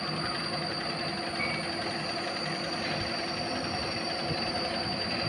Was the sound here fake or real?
real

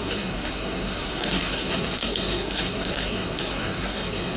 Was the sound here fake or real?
fake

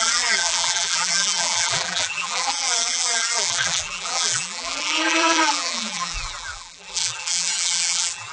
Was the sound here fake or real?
fake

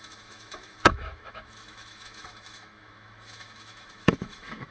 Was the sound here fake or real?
fake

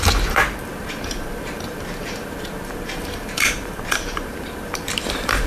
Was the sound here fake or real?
fake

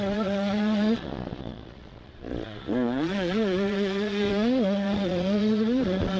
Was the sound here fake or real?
fake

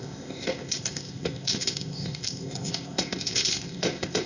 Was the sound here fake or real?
fake